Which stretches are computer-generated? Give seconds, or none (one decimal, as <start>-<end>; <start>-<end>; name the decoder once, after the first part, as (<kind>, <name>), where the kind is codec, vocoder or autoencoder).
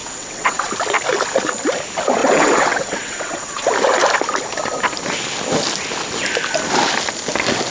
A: 0.0-0.7 (vocoder, WaveNeXt); 2.2-3.7